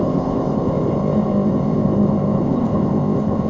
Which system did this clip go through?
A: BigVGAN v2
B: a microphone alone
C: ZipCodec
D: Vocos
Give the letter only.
C